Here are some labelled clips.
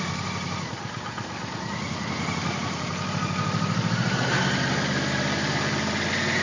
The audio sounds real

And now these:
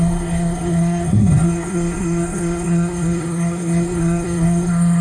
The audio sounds fake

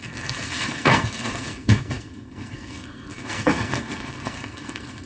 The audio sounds fake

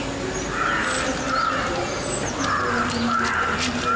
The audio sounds real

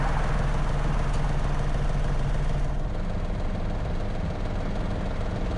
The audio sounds real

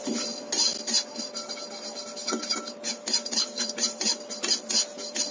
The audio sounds real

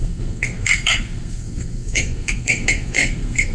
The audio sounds fake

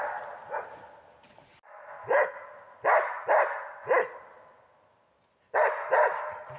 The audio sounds real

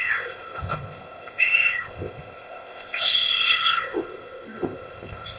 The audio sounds fake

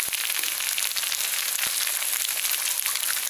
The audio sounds real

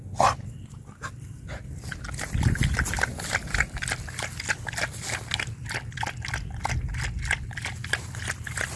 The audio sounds real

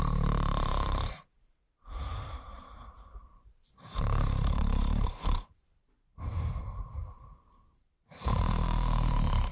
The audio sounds fake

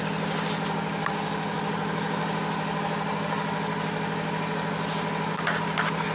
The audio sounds real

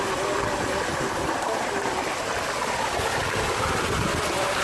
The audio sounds real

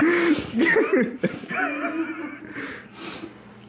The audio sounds real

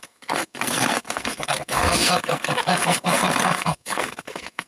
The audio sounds fake